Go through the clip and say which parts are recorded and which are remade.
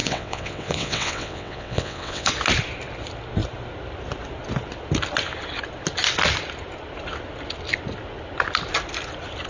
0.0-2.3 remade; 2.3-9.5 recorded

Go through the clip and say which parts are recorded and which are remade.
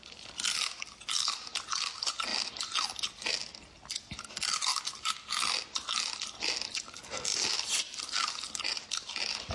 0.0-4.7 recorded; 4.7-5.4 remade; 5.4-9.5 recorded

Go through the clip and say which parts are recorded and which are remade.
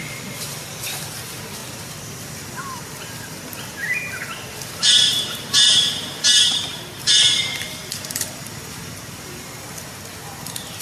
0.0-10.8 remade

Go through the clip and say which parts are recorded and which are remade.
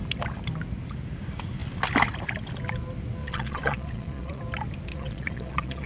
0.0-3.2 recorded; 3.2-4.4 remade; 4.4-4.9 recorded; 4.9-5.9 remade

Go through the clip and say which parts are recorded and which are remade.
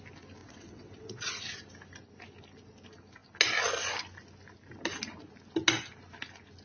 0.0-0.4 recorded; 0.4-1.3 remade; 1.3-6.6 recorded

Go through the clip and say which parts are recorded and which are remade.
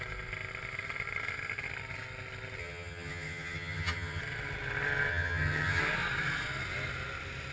0.0-2.6 recorded; 2.6-4.2 remade; 4.2-5.1 recorded; 5.1-5.8 remade; 5.8-7.5 recorded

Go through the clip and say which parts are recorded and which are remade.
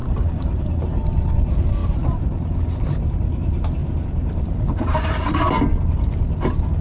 0.0-0.8 remade; 0.8-1.8 recorded; 1.8-2.8 remade; 2.8-3.8 recorded; 3.8-5.4 remade; 5.4-6.8 recorded